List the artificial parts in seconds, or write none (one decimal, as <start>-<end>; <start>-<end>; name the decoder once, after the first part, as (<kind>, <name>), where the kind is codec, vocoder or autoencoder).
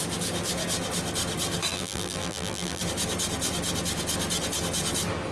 1.7-2.8 (vocoder, BigVGAN v2)